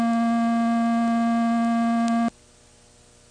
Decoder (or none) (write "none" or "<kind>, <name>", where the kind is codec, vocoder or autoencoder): none